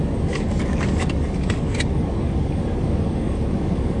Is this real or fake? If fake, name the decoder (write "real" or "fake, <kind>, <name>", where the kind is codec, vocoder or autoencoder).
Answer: fake, codec, DAC